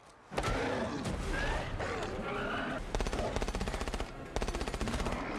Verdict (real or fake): real